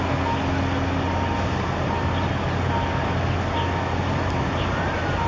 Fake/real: real